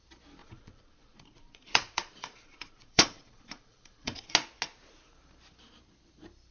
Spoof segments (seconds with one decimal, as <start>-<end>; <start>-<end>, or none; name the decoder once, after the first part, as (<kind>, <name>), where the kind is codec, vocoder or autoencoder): 0.4-4.3 (vocoder, Vocos)